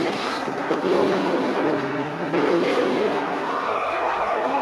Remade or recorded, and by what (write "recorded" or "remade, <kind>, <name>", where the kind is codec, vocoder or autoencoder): remade, codec, SNAC